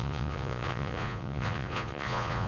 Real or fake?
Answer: fake